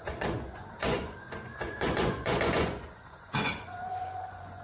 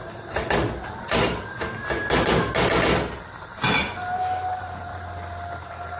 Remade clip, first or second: first